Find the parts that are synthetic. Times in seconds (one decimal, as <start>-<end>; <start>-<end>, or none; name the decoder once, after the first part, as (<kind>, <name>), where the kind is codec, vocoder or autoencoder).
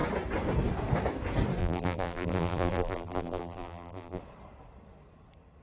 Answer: 1.6-4.2 (vocoder, BigVGAN v2)